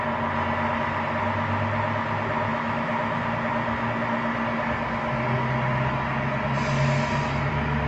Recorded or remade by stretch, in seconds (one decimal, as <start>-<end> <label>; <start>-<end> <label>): 0.0-2.5 recorded; 2.5-3.2 remade; 3.2-7.9 recorded